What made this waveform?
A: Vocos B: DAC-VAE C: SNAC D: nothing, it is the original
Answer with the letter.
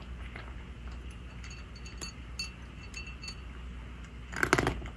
D